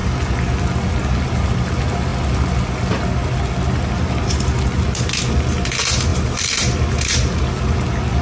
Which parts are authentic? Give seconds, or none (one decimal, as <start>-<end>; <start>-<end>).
0.0-6.1; 6.6-8.2